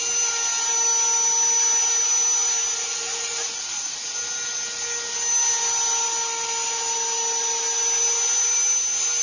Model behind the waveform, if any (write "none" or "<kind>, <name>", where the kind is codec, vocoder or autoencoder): none